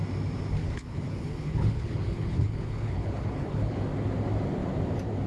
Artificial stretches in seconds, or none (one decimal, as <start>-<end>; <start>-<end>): 0.6-3.8